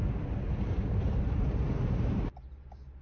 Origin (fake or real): real